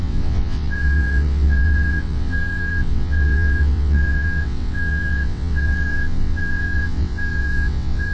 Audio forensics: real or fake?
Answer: fake